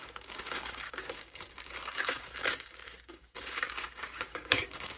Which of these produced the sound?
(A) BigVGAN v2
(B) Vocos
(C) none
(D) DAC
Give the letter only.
D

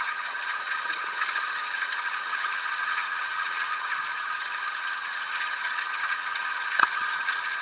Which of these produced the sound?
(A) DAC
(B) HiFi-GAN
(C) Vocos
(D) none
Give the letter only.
B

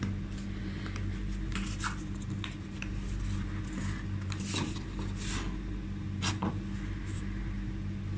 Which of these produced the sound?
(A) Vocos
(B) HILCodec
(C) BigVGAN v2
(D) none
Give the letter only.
D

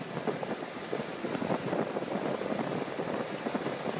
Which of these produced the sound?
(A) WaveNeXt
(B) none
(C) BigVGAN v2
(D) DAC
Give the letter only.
B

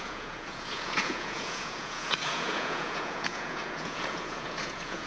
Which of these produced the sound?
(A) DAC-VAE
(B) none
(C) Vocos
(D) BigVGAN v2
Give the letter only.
C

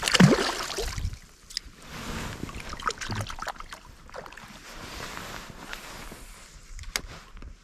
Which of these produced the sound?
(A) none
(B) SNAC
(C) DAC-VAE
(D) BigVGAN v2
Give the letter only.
A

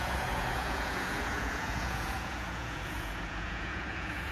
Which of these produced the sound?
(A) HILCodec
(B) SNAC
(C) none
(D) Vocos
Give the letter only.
D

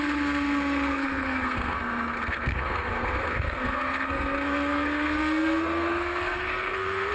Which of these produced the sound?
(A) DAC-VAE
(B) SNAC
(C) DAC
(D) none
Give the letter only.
B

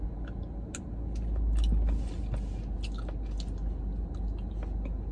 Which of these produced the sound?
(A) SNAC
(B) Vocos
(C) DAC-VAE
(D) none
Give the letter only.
D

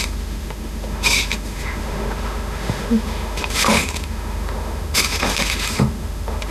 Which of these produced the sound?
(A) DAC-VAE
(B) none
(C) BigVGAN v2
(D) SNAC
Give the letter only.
A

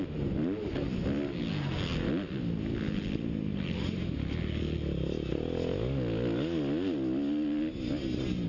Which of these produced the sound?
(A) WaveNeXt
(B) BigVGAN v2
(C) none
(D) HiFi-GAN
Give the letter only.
C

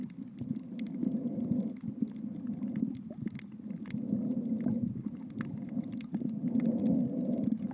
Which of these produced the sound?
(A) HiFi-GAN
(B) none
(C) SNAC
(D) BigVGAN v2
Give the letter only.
B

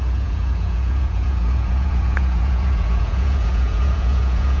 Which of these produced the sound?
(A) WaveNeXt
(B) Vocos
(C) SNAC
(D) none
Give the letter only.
B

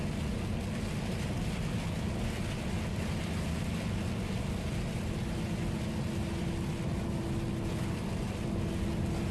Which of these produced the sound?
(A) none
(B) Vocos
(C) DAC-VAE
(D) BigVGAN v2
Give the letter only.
A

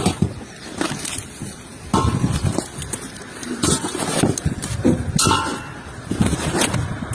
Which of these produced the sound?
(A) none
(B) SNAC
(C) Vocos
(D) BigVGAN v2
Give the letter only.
A